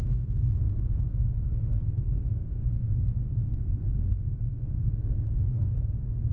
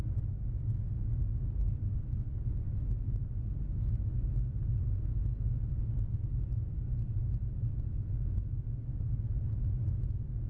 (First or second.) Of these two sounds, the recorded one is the second